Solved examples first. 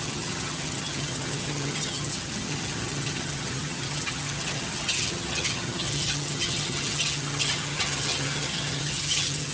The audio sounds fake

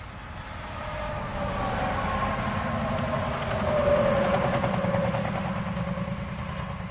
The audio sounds real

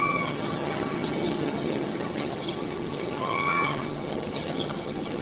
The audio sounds fake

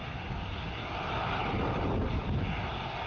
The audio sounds real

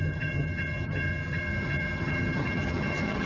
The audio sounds fake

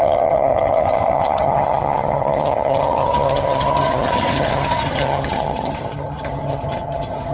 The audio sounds fake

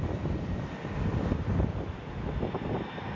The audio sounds real